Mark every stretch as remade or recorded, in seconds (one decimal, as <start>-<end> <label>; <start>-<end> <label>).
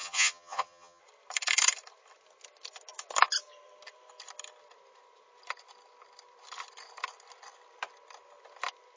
0.0-1.0 remade; 1.0-9.0 recorded